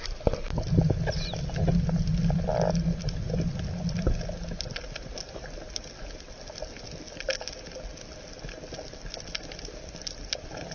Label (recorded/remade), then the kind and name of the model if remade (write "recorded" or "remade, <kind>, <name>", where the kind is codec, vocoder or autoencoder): recorded